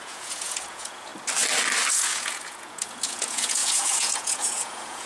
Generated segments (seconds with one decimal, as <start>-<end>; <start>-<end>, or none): 0.0-1.1; 1.9-5.1